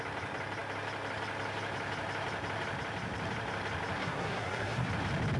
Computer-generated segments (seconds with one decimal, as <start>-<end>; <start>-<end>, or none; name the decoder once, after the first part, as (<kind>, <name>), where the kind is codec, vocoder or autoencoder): 4.0-4.9 (codec, SNAC)